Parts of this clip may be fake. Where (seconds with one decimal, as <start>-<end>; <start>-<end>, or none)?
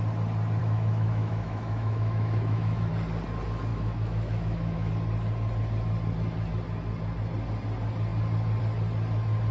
0.6-2.9; 3.7-4.9